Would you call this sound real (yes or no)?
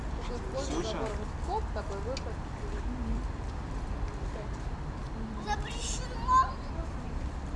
yes